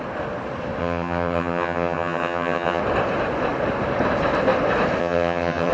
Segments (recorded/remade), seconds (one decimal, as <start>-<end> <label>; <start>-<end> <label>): 0.0-0.8 recorded; 0.8-2.8 remade; 2.8-5.0 recorded; 5.0-5.7 remade